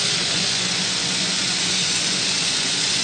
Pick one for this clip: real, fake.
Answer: fake